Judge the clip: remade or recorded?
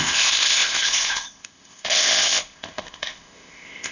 remade